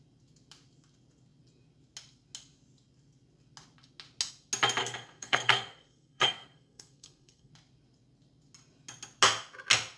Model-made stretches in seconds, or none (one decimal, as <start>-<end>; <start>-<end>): 4.8-7.5